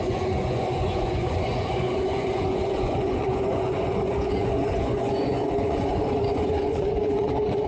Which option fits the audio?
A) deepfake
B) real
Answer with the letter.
A